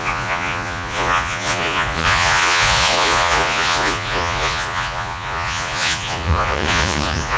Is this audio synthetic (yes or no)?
yes